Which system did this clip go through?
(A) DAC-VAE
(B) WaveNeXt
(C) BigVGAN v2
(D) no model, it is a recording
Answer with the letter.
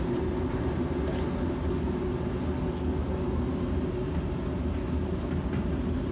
D